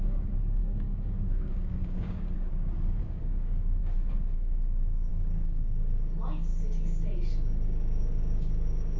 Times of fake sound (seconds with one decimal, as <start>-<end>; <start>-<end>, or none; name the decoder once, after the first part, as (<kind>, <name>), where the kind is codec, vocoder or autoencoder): 0.0-2.5 (codec, DAC); 3.0-6.5; 8.0-9.0